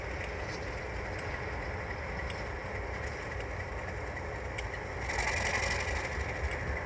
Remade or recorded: recorded